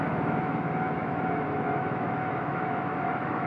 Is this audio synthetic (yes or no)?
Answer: yes